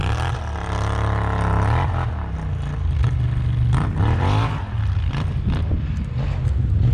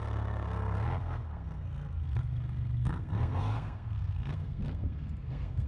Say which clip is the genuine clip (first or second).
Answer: first